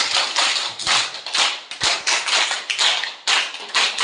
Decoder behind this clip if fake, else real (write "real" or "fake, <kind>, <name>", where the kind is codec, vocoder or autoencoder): real